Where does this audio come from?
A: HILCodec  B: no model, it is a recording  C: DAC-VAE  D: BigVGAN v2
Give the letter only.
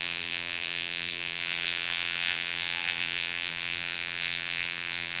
D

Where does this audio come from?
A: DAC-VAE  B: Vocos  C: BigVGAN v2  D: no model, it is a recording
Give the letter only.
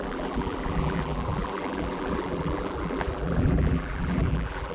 C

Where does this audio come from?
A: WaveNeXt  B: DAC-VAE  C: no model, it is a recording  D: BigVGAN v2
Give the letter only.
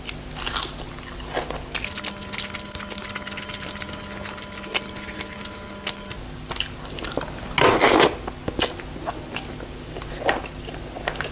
C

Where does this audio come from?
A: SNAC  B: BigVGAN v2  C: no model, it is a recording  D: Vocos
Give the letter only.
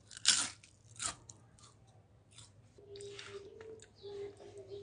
C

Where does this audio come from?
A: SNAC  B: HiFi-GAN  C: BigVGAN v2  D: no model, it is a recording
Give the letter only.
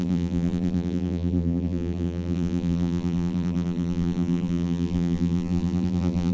C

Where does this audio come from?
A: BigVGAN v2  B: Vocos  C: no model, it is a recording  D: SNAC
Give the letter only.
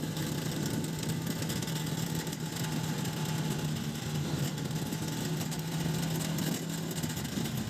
C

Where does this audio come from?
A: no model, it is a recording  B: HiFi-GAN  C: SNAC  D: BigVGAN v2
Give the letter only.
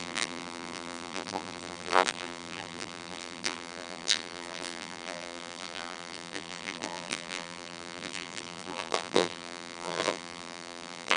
D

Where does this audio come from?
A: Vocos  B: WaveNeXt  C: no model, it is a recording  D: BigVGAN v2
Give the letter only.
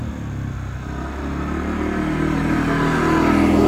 C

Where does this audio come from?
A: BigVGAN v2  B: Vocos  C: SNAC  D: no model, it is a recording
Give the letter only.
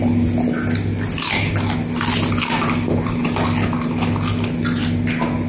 D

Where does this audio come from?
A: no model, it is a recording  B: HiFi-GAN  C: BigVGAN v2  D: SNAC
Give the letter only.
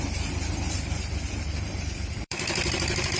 C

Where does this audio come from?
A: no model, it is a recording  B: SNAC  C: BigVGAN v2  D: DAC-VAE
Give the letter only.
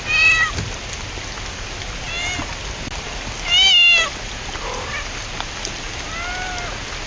A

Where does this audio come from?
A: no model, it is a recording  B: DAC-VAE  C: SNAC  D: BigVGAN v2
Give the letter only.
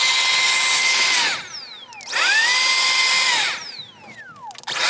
A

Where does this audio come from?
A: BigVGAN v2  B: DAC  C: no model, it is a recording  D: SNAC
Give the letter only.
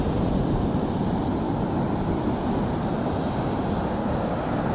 C